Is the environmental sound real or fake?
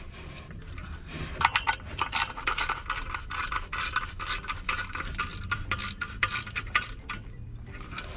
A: fake